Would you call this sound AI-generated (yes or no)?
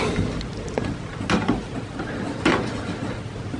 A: no